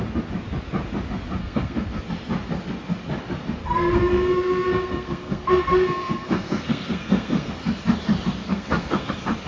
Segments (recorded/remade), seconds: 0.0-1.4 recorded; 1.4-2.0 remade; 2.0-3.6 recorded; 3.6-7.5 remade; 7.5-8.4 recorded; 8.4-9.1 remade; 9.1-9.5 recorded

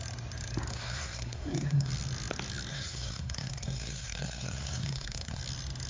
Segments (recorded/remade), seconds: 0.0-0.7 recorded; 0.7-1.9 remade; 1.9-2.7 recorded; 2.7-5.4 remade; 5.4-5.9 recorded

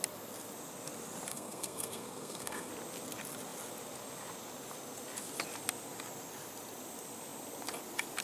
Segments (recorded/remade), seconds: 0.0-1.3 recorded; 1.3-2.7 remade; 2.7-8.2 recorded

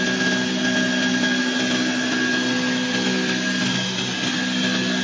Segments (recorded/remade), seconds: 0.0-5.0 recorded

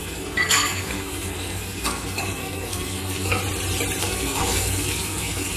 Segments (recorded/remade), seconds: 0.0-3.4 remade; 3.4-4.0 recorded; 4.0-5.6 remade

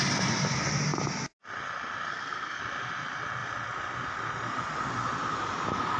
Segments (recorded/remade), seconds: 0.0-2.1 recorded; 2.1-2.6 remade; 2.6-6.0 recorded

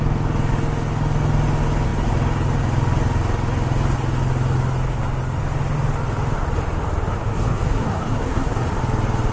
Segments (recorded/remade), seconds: 0.0-7.1 recorded; 7.1-8.8 remade; 8.8-9.3 recorded

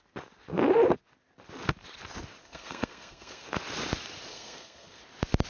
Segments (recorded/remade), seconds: 0.0-2.4 recorded; 2.4-3.5 remade; 3.5-4.3 recorded; 4.3-5.0 remade; 5.0-5.5 recorded